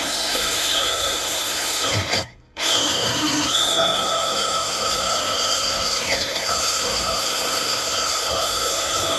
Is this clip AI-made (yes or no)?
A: yes